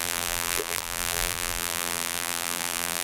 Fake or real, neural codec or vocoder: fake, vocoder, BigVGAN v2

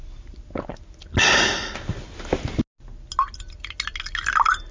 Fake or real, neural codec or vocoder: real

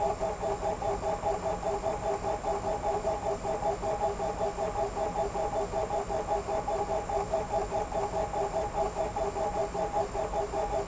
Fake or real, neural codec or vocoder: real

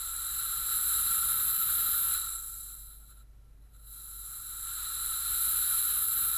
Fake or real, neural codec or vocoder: real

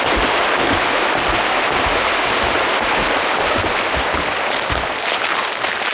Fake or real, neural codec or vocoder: real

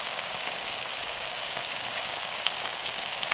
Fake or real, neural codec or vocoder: fake, codec, DAC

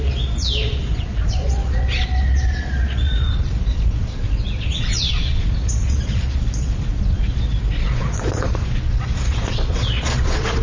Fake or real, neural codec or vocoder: fake, vocoder, Vocos